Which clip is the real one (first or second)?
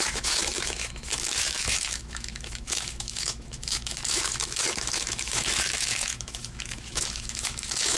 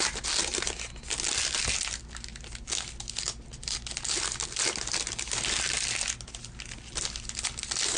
second